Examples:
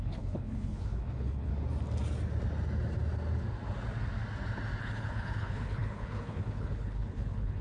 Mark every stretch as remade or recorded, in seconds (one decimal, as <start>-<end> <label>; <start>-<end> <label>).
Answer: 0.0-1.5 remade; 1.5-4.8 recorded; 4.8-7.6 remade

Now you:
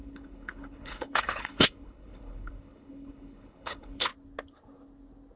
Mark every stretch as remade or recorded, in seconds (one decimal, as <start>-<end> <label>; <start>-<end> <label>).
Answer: 0.0-4.1 remade; 4.1-5.4 recorded

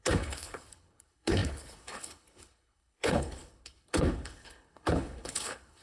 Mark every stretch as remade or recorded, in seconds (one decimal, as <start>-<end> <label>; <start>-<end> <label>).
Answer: 0.0-5.8 remade